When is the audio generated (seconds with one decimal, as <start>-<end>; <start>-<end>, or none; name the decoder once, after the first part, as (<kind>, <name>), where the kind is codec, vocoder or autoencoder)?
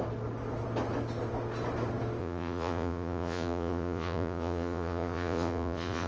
2.2-6.1 (vocoder, Vocos)